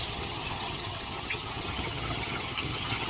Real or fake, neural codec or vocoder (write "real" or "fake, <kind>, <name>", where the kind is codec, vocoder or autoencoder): fake, vocoder, HiFi-GAN